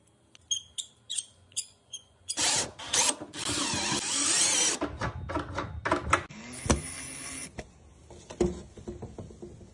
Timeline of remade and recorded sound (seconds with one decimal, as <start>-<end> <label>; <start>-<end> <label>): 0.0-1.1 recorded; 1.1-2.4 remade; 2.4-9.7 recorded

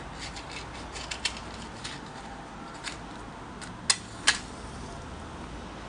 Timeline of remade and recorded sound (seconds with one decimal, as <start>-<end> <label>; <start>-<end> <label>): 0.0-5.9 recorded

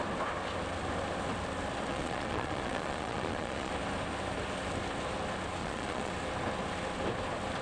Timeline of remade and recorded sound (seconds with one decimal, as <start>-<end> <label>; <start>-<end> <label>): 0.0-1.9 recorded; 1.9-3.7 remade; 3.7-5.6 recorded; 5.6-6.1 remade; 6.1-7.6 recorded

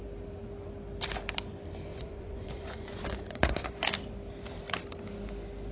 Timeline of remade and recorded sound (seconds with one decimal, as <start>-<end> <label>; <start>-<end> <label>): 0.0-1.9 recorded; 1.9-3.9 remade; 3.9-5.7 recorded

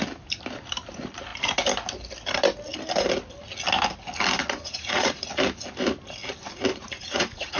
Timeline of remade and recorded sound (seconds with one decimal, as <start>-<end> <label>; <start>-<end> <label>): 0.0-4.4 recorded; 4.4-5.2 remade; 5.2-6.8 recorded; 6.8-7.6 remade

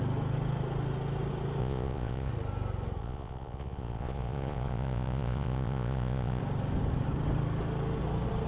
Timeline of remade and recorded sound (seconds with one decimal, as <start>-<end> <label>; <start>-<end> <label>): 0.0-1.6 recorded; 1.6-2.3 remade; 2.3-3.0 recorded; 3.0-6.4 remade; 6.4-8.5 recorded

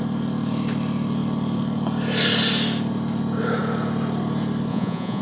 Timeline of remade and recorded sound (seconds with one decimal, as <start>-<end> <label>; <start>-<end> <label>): 0.0-4.7 recorded; 4.7-5.2 remade